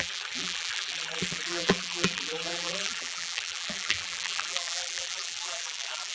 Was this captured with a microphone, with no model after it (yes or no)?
no